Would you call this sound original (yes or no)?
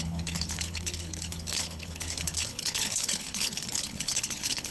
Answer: no